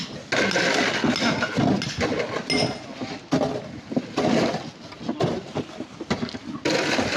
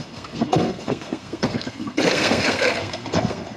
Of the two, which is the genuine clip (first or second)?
first